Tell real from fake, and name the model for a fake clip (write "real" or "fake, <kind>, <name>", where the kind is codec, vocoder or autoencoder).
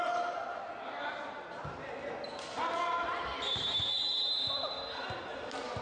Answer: real